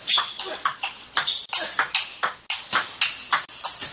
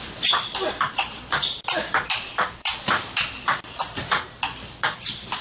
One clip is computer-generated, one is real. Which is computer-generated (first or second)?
second